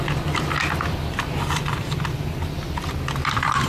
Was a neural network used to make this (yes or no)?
no